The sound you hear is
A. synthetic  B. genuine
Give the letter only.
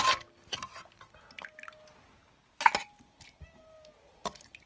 B